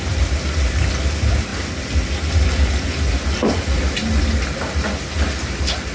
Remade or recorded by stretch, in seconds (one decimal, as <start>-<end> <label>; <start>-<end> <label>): 0.0-5.9 recorded